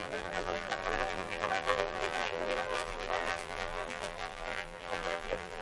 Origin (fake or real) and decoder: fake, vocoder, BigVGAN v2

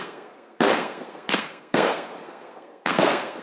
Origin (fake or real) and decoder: fake, codec, SNAC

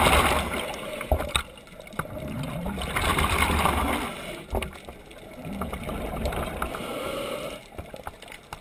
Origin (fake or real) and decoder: real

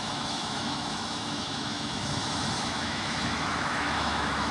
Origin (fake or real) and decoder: fake, autoencoder, DAC-VAE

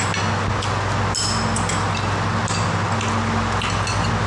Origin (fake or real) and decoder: real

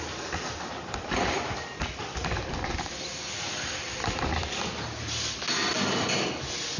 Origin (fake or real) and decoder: real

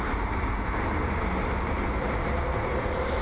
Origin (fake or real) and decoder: real